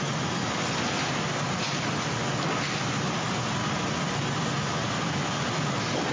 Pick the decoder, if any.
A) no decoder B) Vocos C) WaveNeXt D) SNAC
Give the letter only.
A